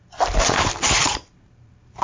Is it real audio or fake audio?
fake